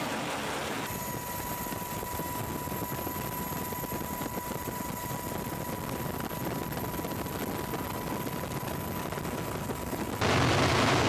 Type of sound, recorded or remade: recorded